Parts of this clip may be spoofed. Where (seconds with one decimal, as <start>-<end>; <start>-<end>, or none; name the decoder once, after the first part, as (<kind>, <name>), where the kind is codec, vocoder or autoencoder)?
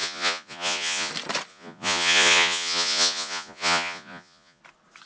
0.0-1.1 (vocoder, Vocos); 1.5-4.6